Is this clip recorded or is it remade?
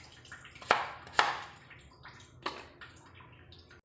recorded